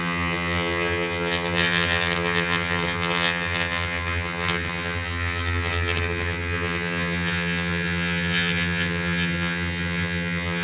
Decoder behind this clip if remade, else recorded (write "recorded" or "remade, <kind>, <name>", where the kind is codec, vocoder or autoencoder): remade, vocoder, HiFi-GAN